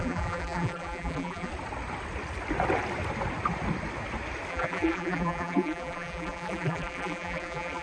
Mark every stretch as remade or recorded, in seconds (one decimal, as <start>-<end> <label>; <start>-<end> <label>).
0.0-1.5 remade; 1.5-4.5 recorded; 4.5-7.8 remade